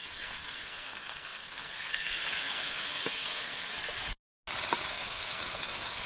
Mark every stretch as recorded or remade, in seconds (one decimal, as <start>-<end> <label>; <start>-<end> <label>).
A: 0.0-3.7 remade; 3.7-4.9 recorded; 4.9-6.1 remade